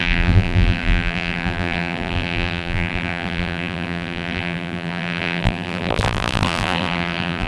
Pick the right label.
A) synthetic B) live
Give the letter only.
A